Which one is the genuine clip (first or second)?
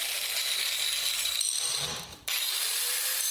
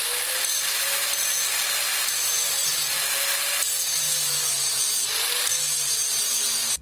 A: second